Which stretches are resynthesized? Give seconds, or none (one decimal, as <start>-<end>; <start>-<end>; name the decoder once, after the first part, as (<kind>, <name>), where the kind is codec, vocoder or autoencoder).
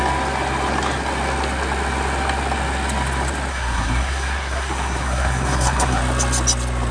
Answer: 3.5-6.0 (codec, SNAC)